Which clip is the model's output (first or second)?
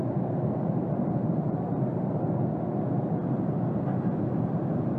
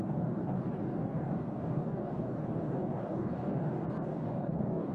second